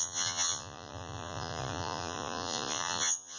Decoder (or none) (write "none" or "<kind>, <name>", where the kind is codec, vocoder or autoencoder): vocoder, Vocos